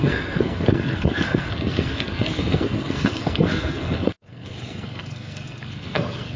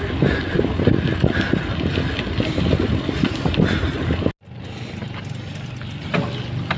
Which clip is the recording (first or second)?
second